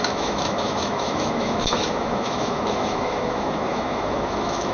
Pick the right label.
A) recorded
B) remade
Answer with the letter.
B